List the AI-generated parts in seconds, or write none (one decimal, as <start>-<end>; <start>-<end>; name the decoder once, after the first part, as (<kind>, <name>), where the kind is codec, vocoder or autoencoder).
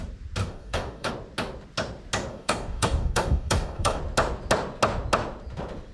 0.4-1.1 (codec, DAC); 2.3-4.0